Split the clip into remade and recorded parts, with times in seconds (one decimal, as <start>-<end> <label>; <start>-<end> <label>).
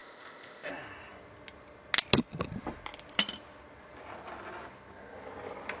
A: 0.0-0.7 remade; 0.7-5.8 recorded